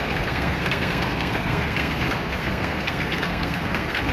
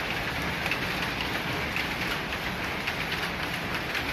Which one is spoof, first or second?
first